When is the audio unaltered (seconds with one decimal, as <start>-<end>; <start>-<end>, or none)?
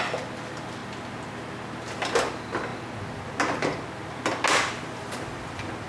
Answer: 0.0-5.9